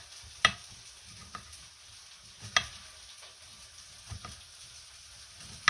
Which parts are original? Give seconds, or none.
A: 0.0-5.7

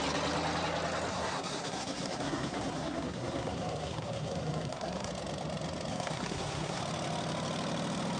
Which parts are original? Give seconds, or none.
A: 0.0-1.1; 5.1-5.9; 6.8-8.2

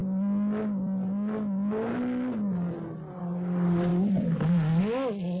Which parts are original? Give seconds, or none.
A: 0.0-5.4

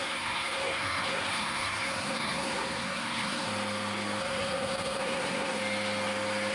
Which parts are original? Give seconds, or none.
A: 3.5-4.2; 5.6-6.5

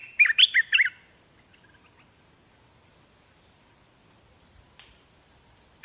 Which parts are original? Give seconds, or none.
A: 0.0-5.8

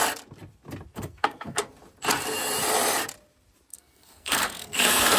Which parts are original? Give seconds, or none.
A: 0.0-0.9; 1.7-3.7

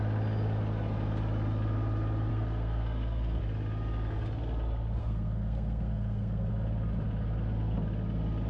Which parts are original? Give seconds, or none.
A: 0.0-2.3; 3.4-5.0; 6.5-8.5